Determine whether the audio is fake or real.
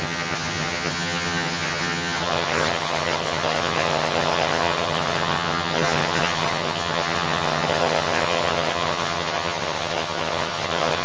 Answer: fake